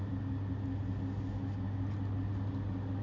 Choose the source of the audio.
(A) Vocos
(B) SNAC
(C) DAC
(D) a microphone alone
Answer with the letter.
D